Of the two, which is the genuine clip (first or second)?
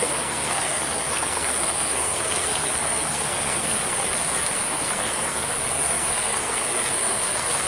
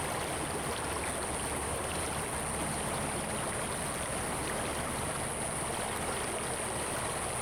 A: second